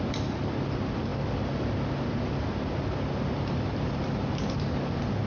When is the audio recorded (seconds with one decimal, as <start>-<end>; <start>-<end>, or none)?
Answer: 0.0-5.3